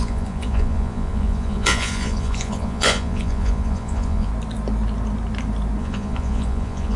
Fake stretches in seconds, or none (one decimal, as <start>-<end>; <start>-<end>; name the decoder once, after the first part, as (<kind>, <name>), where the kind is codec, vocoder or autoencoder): 0.0-4.3 (vocoder, Vocos); 5.8-7.0